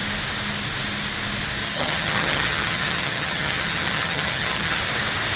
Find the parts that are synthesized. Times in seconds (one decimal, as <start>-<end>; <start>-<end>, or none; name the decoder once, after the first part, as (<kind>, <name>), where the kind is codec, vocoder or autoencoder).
1.6-4.8 (vocoder, HiFi-GAN)